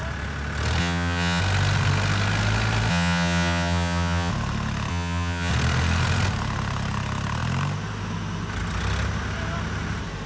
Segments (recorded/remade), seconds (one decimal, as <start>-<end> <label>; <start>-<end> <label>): 0.0-0.8 recorded; 0.8-1.4 remade; 1.4-2.9 recorded; 2.9-4.3 remade; 4.3-4.9 recorded; 4.9-5.5 remade; 5.5-10.3 recorded